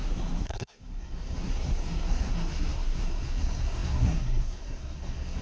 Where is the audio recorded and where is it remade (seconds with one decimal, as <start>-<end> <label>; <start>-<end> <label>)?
0.0-5.4 remade